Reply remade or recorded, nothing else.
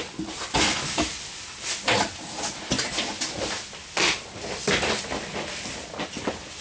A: recorded